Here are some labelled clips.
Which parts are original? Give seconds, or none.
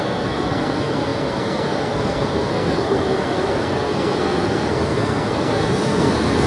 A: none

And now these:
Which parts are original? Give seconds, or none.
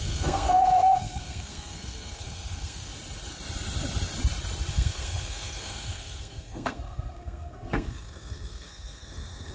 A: 2.9-4.7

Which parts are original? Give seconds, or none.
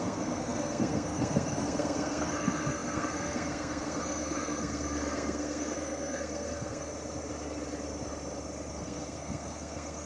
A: 6.9-8.7